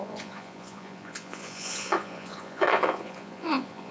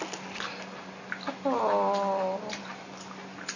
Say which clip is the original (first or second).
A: second